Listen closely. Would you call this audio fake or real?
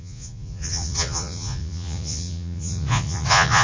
fake